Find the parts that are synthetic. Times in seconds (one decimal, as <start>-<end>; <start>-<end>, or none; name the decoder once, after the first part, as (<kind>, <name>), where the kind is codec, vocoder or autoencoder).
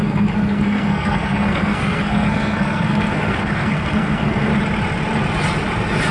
0.0-4.5 (codec, SNAC)